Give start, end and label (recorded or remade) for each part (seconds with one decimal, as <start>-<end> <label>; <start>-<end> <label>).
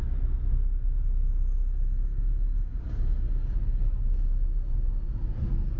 0.0-5.8 recorded